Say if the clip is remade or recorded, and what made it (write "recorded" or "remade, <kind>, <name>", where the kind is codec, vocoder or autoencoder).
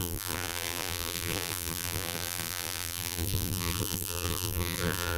remade, vocoder, BigVGAN v2